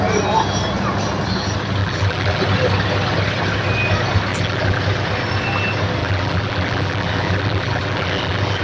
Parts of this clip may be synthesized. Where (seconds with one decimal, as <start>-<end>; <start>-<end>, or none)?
1.8-2.4; 4.3-4.8; 6.0-8.6